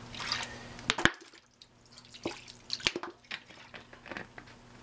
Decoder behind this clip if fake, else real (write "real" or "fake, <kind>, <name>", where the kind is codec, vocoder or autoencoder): real